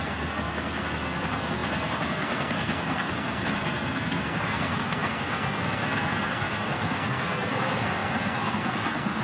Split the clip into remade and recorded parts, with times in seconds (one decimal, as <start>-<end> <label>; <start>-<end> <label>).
0.0-9.2 remade